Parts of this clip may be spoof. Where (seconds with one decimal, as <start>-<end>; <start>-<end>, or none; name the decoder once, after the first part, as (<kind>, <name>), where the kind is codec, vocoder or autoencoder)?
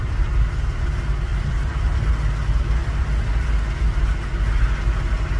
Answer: 1.3-2.1 (vocoder, BigVGAN v2)